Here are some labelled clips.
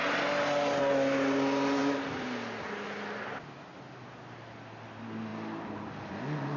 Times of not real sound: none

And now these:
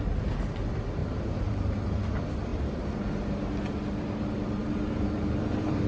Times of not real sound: 1.0-1.6 (vocoder, BigVGAN v2); 2.5-3.1; 4.6-5.9

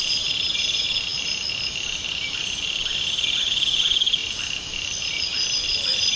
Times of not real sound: 0.0-1.1 (vocoder, BigVGAN v2); 2.9-4.2; 5.0-6.2

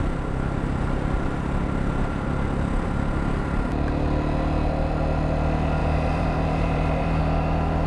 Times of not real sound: 5.8-7.2 (vocoder, BigVGAN v2)

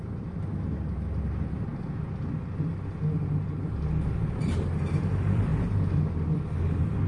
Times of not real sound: 0.0-1.7 (vocoder, BigVGAN v2); 5.1-5.5

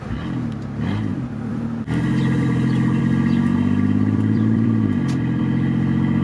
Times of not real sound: 1.1-3.0 (vocoder, BigVGAN v2); 3.5-5.4

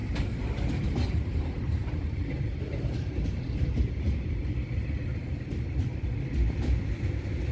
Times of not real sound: 1.8-4.4 (vocoder, BigVGAN v2)